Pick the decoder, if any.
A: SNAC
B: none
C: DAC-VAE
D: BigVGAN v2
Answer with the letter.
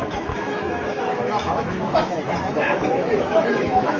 C